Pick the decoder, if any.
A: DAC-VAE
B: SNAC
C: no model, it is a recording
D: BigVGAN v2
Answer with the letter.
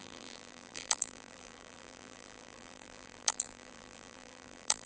D